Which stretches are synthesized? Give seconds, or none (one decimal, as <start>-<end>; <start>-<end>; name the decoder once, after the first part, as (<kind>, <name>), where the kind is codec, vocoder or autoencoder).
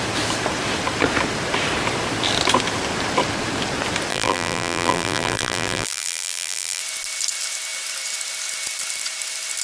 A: 4.1-6.8 (vocoder, BigVGAN v2)